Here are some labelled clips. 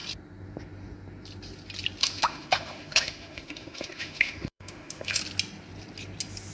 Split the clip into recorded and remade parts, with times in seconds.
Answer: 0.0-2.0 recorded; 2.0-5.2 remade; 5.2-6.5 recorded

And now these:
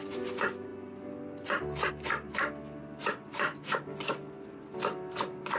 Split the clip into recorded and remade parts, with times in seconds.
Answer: 0.0-5.6 recorded

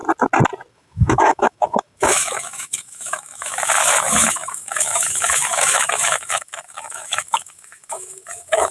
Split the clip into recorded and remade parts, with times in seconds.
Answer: 0.0-0.7 recorded; 0.7-8.7 remade

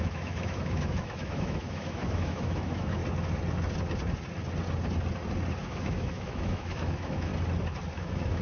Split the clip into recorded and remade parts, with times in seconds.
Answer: 0.0-3.0 remade; 3.0-5.6 recorded; 5.6-7.3 remade; 7.3-7.9 recorded; 7.9-8.4 remade

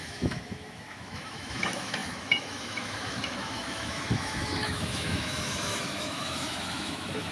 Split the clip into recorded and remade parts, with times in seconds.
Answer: 0.0-7.3 remade

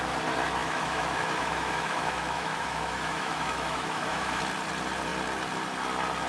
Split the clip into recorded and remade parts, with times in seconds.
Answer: 0.0-0.6 recorded; 0.6-4.4 remade; 4.4-6.3 recorded

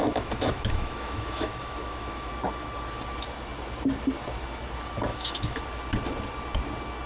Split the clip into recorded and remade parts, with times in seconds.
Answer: 0.0-2.3 remade; 2.3-5.1 recorded; 5.1-5.6 remade; 5.6-7.1 recorded